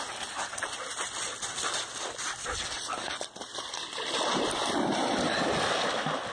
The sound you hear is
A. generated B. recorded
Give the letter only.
B